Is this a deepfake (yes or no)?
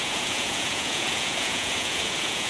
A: yes